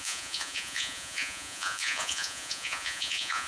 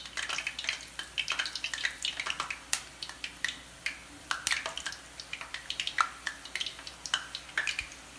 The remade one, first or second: first